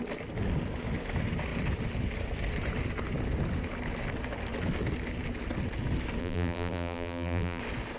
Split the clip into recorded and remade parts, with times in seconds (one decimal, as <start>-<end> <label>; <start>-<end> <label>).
0.0-6.2 recorded; 6.2-7.6 remade; 7.6-8.0 recorded